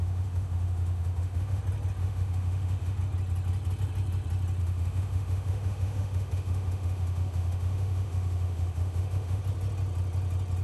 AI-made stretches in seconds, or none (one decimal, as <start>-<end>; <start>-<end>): 0.0-1.6; 2.0-3.0; 4.6-9.4